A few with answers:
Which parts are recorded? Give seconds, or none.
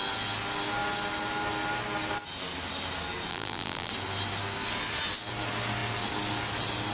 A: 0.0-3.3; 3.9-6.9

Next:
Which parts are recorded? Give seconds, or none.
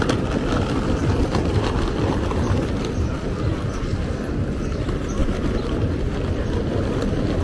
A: 0.0-7.4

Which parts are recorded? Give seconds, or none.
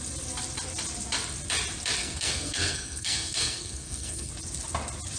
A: 0.0-2.0; 4.3-5.2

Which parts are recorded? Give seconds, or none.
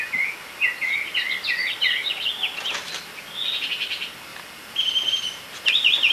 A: 0.0-6.1